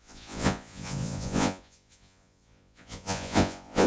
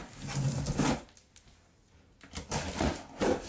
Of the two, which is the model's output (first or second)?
first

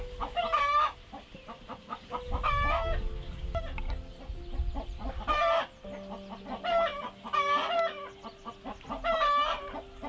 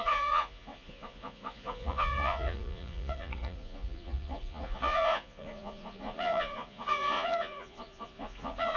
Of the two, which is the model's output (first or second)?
second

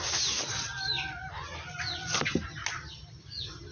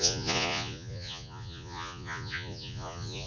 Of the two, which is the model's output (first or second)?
second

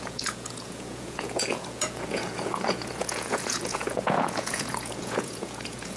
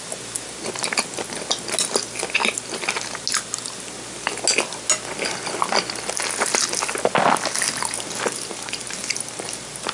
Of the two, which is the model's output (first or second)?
first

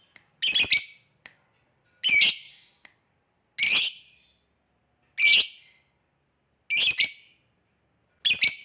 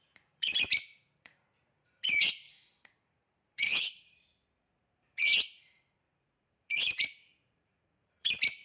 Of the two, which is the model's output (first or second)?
second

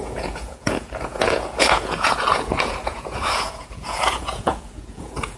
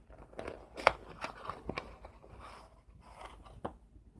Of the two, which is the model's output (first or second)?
first